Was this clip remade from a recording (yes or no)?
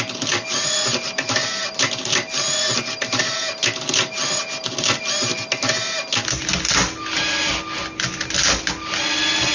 no